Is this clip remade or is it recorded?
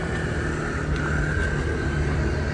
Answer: recorded